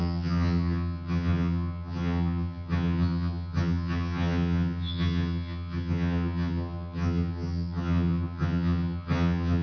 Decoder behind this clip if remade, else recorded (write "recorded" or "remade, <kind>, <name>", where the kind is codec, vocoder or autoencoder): remade, vocoder, HiFi-GAN